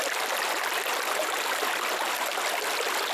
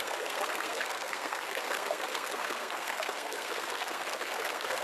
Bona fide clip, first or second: first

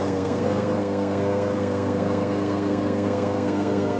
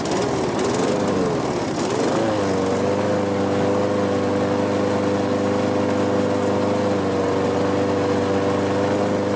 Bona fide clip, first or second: second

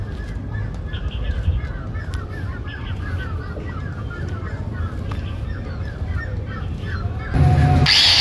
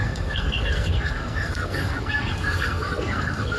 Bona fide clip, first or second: first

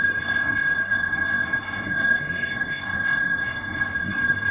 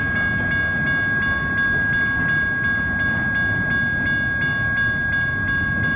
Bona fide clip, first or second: second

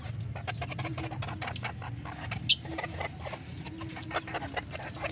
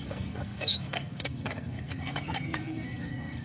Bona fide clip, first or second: first